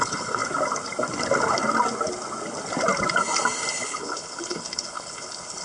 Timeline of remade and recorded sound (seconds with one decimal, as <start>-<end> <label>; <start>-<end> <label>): 0.0-0.4 remade; 0.4-3.8 recorded; 3.8-5.6 remade